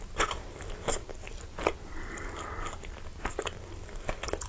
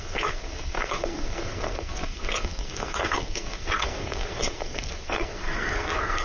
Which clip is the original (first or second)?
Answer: first